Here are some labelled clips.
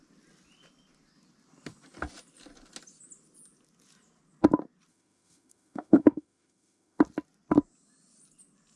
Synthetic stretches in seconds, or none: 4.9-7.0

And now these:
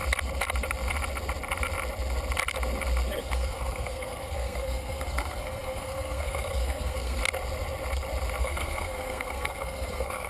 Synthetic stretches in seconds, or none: 3.2-7.2; 8.4-10.3